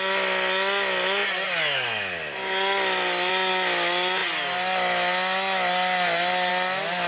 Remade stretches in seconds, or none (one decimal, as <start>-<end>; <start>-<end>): none